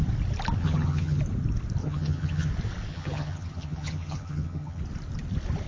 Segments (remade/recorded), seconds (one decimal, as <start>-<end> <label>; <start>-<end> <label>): 0.0-0.6 recorded; 0.6-1.2 remade; 1.2-1.8 recorded; 1.8-2.5 remade; 2.5-2.9 recorded; 2.9-4.8 remade; 4.8-5.7 recorded